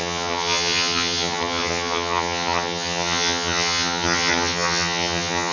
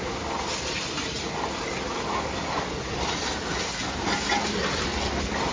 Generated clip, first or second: first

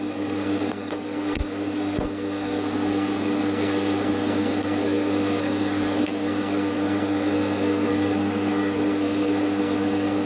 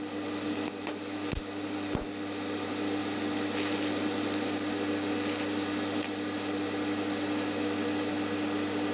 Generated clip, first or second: first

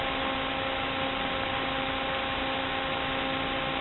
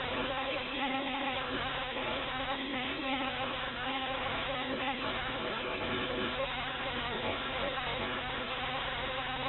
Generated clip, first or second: second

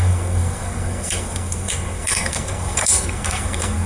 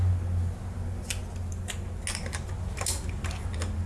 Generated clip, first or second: first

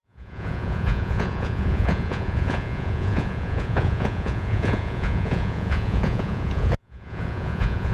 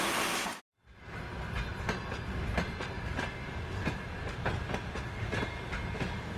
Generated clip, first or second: first